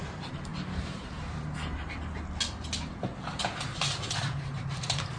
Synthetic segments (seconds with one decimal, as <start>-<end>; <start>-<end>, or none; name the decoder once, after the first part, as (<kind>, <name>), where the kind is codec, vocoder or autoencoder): 0.5-1.4 (vocoder, BigVGAN v2); 2.9-5.2